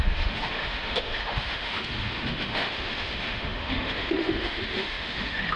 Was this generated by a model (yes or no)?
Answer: yes